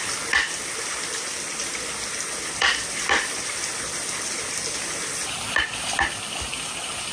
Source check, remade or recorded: recorded